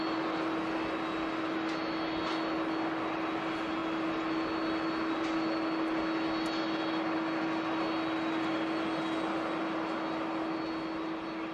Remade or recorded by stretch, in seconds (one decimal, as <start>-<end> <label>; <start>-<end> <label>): 0.0-11.5 recorded